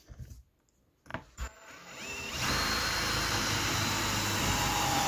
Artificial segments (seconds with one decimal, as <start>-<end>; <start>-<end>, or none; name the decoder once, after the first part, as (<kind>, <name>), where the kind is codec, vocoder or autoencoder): 1.1-3.8 (vocoder, BigVGAN v2)